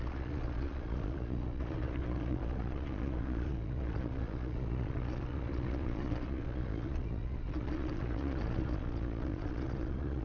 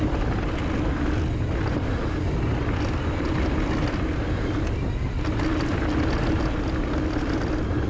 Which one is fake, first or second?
first